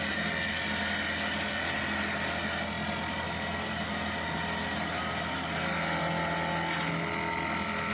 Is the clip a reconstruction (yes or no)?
no